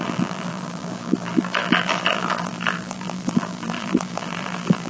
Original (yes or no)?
no